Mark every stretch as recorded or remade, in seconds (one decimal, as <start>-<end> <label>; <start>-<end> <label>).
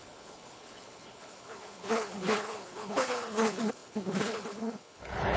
0.0-5.4 remade